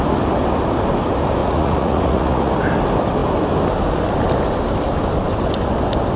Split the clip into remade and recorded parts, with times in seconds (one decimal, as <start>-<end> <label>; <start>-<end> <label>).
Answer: 0.0-1.4 recorded; 1.4-2.5 remade; 2.5-6.2 recorded